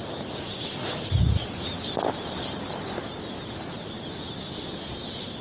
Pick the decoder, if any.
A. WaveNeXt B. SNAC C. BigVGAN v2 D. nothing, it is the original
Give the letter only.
D